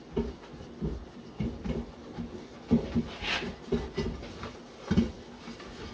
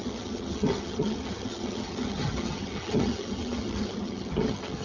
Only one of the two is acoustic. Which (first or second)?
first